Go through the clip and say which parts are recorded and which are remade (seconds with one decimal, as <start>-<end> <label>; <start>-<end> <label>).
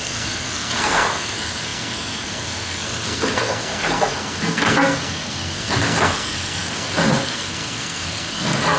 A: 0.0-8.8 remade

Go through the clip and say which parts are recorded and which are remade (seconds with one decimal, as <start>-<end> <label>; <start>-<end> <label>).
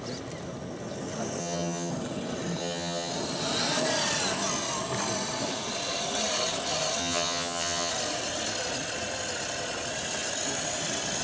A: 0.0-1.4 recorded; 1.4-1.9 remade; 1.9-2.6 recorded; 2.6-3.1 remade; 3.1-7.0 recorded; 7.0-7.9 remade; 7.9-11.2 recorded